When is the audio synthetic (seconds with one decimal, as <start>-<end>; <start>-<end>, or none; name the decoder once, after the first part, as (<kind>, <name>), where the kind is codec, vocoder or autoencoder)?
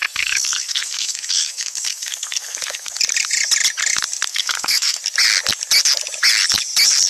0.0-3.0 (codec, SNAC); 4.3-5.0